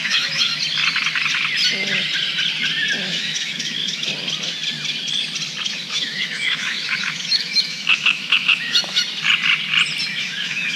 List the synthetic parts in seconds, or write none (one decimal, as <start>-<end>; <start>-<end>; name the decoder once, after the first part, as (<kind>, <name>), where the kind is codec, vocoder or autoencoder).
0.0-0.5 (autoencoder, DAC-VAE); 3.1-4.1; 5.7-9.0; 10.1-10.8